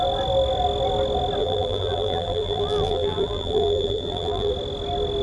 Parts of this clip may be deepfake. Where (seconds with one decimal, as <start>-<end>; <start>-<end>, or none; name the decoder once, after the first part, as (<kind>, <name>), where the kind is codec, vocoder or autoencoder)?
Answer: 1.4-4.5 (vocoder, BigVGAN v2)